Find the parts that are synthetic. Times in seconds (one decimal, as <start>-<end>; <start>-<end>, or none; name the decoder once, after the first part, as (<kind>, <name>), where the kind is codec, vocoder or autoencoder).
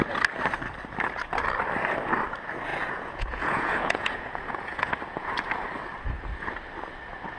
2.7-4.9 (vocoder, Vocos)